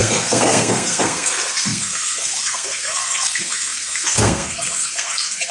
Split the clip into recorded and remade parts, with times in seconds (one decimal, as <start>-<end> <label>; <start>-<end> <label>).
0.0-5.5 remade